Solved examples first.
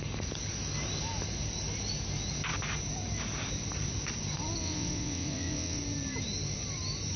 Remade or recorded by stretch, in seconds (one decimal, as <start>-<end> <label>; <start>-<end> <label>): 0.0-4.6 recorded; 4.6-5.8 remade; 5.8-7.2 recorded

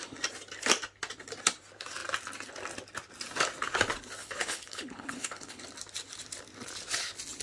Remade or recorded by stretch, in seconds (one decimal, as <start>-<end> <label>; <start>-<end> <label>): 0.0-4.2 recorded; 4.2-5.6 remade; 5.6-7.4 recorded

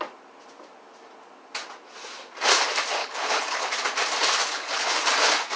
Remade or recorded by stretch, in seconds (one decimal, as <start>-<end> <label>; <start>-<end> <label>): 0.0-3.0 recorded; 3.0-3.7 remade; 3.7-4.5 recorded; 4.5-5.0 remade; 5.0-5.6 recorded

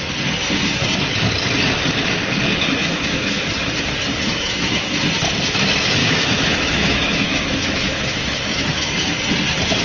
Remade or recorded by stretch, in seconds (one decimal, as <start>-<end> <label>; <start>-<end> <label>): 0.0-2.8 recorded; 2.8-3.5 remade; 3.5-4.3 recorded; 4.3-5.0 remade; 5.0-6.0 recorded; 6.0-8.9 remade; 8.9-9.8 recorded